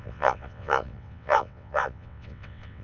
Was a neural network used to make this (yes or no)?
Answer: yes